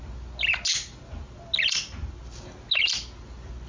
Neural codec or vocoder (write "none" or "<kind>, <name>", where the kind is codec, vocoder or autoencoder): none